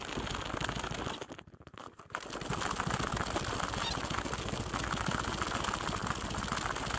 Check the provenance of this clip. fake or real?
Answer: real